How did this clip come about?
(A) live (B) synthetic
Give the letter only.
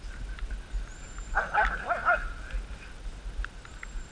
A